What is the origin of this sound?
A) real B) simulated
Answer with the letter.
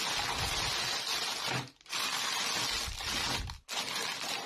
A